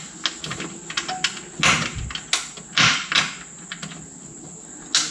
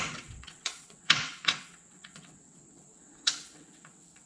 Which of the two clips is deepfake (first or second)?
second